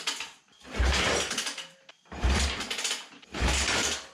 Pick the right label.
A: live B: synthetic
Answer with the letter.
A